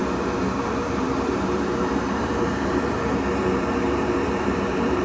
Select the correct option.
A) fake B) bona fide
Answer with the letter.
A